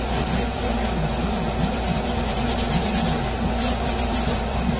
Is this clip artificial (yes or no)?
yes